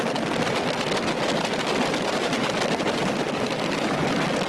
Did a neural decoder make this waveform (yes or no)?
no